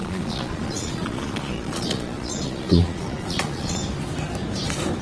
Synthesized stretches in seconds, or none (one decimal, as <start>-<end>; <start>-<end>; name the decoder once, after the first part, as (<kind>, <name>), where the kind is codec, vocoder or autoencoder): 0.0-3.8 (vocoder, Vocos)